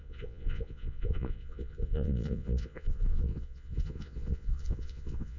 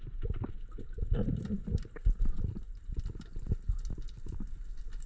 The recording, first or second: second